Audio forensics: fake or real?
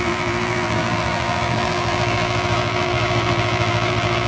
fake